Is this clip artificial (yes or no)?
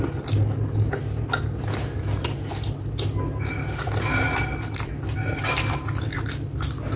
no